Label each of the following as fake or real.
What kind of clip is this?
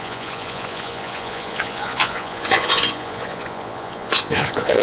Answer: fake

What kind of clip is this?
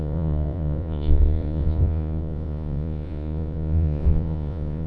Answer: fake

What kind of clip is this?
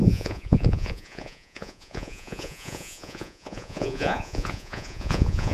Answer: fake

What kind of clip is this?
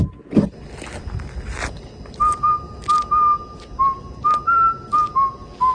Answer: real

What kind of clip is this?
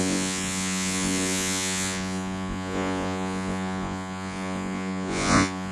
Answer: fake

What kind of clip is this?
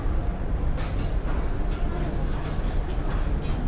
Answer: real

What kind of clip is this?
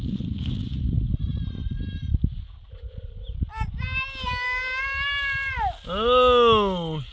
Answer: real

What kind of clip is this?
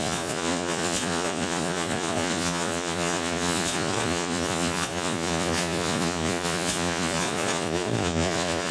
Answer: fake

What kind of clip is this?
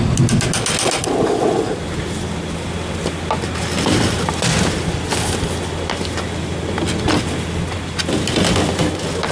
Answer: real